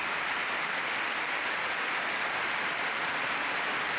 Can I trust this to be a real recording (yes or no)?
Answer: yes